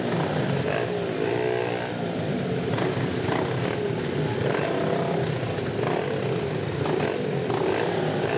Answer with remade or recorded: recorded